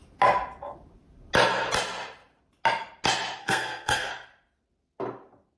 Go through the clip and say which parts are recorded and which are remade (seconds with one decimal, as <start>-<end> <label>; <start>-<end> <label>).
0.0-3.4 recorded; 3.4-4.1 remade; 4.1-5.6 recorded